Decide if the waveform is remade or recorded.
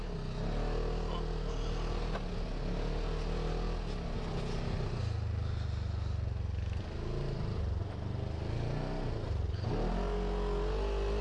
recorded